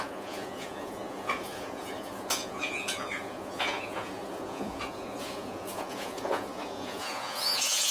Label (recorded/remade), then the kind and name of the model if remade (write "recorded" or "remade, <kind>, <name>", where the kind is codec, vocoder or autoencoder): remade, vocoder, Vocos